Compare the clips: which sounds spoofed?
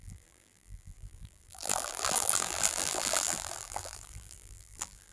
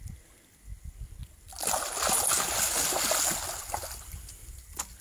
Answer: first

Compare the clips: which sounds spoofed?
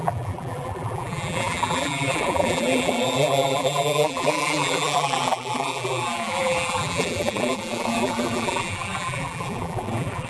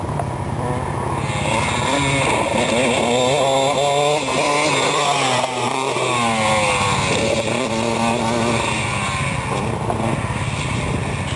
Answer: first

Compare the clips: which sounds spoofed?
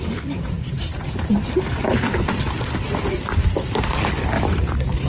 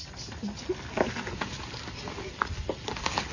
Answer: first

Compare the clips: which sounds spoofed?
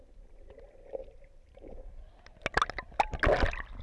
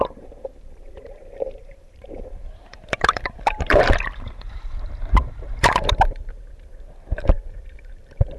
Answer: second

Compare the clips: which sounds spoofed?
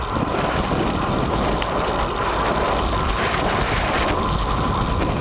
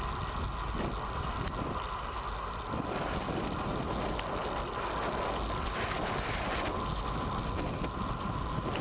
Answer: first